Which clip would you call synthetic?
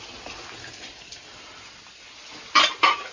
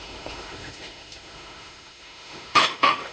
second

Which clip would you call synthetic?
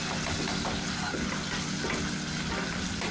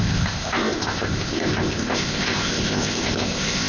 second